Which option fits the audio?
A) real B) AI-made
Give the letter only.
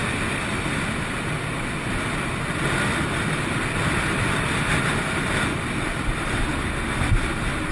A